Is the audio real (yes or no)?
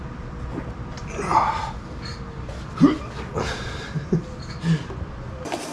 yes